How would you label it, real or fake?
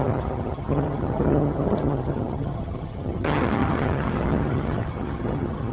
fake